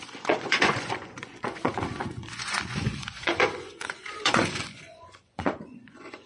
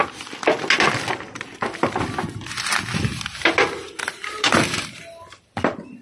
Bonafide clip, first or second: second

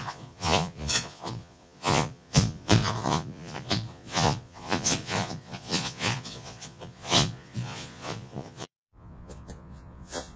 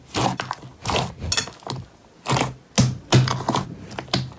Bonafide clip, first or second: second